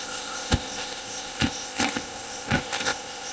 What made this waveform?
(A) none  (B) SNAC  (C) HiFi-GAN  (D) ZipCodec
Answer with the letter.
D